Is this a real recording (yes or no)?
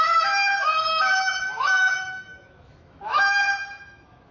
no